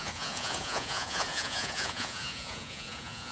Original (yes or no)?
no